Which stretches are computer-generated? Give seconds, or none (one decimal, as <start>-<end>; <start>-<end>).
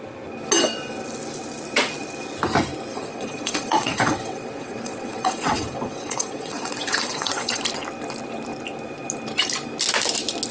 2.9-7.6